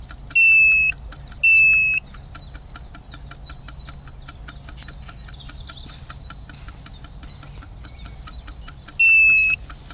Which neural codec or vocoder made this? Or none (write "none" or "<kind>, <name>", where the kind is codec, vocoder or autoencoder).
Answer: none